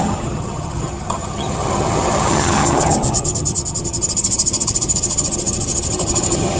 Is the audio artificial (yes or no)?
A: yes